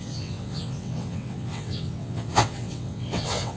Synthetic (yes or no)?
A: yes